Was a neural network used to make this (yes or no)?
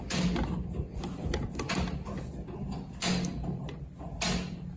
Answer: no